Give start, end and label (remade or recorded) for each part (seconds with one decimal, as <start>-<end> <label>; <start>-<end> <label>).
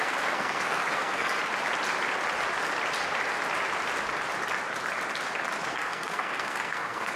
0.0-1.4 remade; 1.4-5.7 recorded; 5.7-7.2 remade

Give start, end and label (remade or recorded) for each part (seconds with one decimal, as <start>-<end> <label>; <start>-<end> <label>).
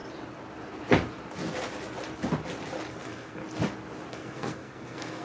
0.0-2.9 recorded; 2.9-3.4 remade; 3.4-4.1 recorded; 4.1-5.2 remade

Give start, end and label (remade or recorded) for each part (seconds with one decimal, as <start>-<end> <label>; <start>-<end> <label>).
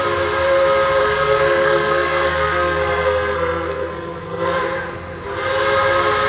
0.0-1.0 recorded; 1.0-4.6 remade; 4.6-6.3 recorded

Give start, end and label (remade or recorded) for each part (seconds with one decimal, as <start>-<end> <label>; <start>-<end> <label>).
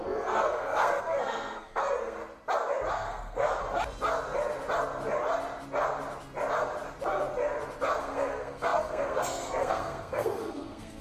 0.0-2.2 remade; 2.2-2.9 recorded; 2.9-3.6 remade; 3.6-8.0 recorded; 8.0-11.0 remade